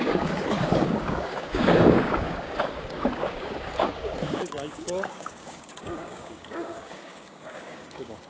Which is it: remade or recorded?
remade